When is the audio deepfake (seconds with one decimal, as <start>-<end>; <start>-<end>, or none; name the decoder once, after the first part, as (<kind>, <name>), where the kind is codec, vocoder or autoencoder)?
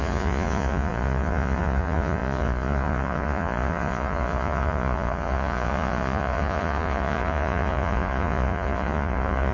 0.0-9.5 (vocoder, Vocos)